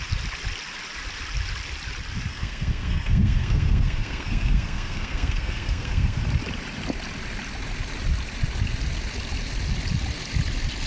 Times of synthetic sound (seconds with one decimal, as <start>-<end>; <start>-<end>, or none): 2.3-6.2